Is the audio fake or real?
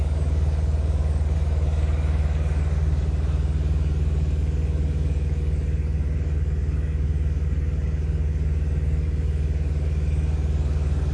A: fake